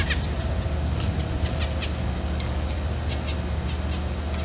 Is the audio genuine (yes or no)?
yes